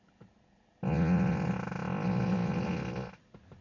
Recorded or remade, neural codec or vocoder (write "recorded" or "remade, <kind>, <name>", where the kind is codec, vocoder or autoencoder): recorded